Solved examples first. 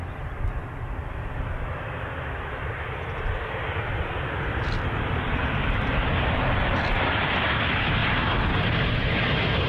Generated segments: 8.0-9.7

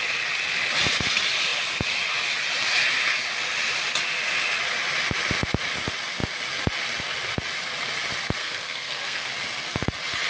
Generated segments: 8.4-9.3

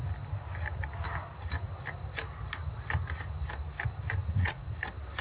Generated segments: 4.2-4.7

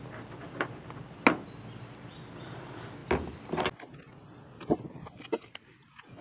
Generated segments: none

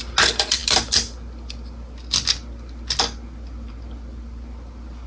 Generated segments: none